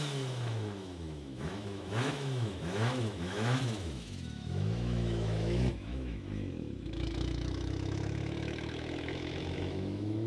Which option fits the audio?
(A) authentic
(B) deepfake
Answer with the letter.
B